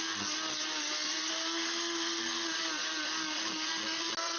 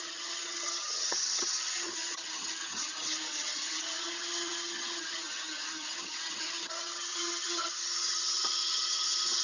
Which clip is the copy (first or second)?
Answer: second